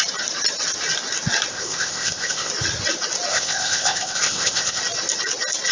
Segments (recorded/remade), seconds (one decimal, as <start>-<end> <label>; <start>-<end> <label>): 0.0-1.5 recorded; 1.5-2.5 remade; 2.5-3.3 recorded; 3.3-4.8 remade; 4.8-5.7 recorded

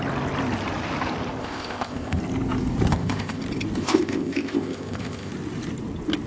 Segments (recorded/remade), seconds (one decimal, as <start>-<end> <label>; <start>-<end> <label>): 0.0-1.4 recorded; 1.4-2.2 remade; 2.2-2.9 recorded; 2.9-3.4 remade; 3.4-3.8 recorded; 3.8-5.3 remade; 5.3-6.3 recorded

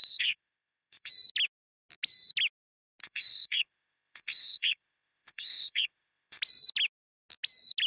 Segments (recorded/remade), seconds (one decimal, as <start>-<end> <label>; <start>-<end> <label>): 0.0-1.1 remade; 1.1-3.0 recorded; 3.0-6.4 remade; 6.4-7.9 recorded